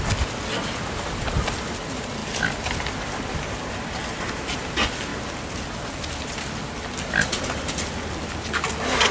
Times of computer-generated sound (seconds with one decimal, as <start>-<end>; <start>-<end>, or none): none

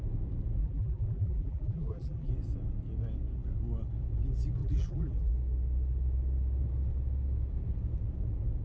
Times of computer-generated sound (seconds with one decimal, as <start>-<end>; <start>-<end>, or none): 0.6-2.3; 4.6-5.3

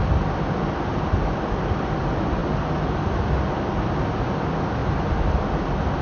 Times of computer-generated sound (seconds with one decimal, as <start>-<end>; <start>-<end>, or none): 0.0-2.4; 4.2-4.8

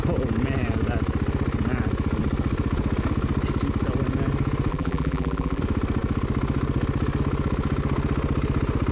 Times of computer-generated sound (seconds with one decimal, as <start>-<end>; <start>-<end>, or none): 4.7-5.6